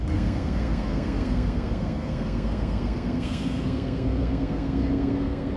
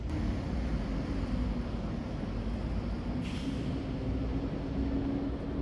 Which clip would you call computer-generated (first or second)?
first